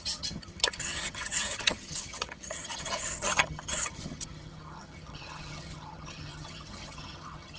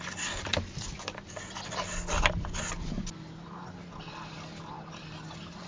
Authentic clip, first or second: second